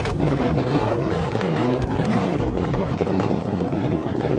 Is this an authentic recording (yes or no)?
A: no